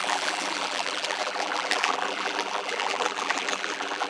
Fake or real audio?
fake